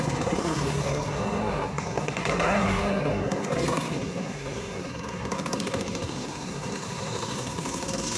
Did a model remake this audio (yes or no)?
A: yes